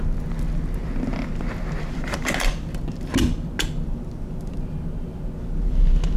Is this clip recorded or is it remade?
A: recorded